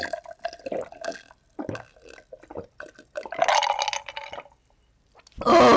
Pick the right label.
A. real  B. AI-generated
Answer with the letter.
A